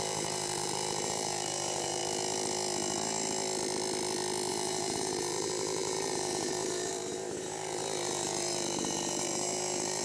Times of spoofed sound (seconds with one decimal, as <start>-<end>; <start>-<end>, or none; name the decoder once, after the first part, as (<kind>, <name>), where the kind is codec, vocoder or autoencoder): 0.0-2.0 (vocoder, BigVGAN v2); 4.5-10.0